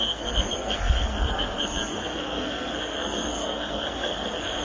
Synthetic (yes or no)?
yes